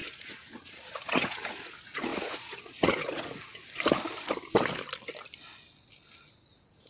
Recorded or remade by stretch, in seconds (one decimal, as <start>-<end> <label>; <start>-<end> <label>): 0.0-3.5 remade; 3.5-6.4 recorded; 6.4-6.9 remade